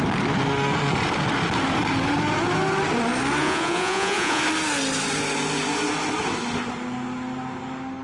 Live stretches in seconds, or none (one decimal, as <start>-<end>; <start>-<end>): 0.0-3.4; 4.4-8.0